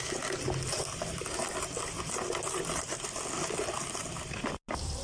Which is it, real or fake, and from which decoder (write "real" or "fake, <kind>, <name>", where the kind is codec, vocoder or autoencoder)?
real